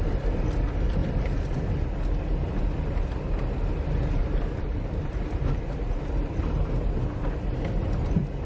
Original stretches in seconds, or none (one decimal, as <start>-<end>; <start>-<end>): 0.0-1.0; 1.6-4.2; 6.5-8.4